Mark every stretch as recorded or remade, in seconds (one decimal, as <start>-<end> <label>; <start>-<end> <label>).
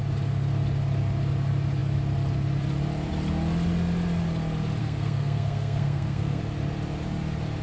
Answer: 0.0-4.8 recorded; 4.8-6.4 remade; 6.4-7.6 recorded